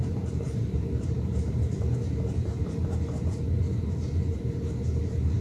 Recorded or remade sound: remade